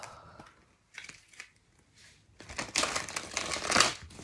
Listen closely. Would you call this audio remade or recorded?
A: recorded